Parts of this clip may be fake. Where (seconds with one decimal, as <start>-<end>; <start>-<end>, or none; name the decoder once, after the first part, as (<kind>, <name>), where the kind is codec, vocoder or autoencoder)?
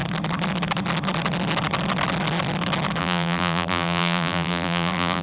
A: 3.0-5.2 (vocoder, BigVGAN v2)